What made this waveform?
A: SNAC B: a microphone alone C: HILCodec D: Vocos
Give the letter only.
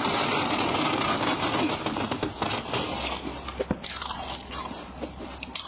B